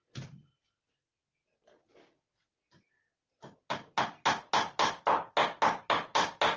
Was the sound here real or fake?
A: real